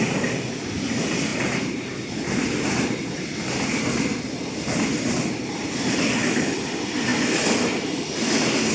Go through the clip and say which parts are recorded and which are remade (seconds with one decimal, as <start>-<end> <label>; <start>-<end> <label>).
0.0-8.7 recorded